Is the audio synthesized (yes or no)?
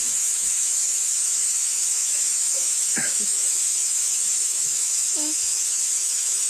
yes